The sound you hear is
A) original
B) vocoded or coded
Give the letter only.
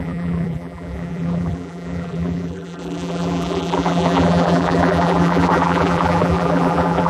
B